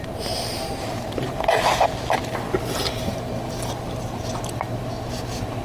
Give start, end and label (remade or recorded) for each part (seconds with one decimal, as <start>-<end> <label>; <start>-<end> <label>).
0.0-5.6 recorded